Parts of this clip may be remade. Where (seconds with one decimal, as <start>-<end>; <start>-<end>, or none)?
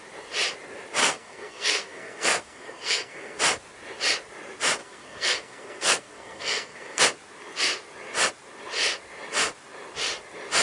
1.0-3.4; 4.8-7.0